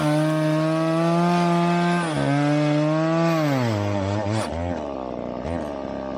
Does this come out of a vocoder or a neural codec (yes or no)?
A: no